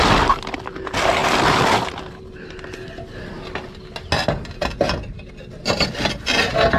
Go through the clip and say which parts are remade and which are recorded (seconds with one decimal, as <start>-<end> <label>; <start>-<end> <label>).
0.0-6.8 recorded